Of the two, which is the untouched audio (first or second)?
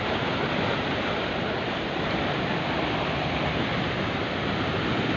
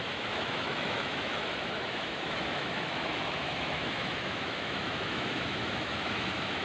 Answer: first